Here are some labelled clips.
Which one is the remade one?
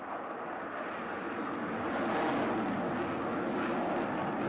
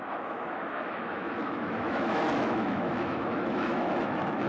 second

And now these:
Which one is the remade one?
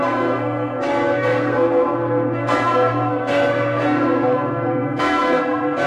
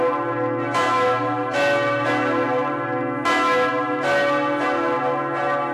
first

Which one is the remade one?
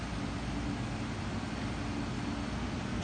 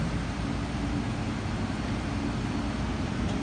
second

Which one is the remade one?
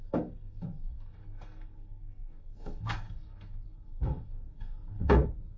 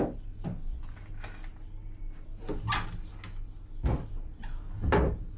first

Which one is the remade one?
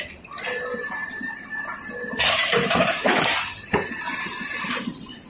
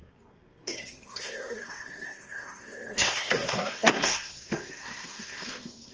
second